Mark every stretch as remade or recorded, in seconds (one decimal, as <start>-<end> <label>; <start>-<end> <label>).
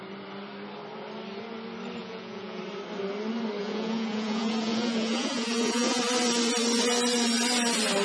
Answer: 0.0-2.0 recorded; 2.0-2.6 remade; 2.6-3.6 recorded; 3.6-6.0 remade; 6.0-8.0 recorded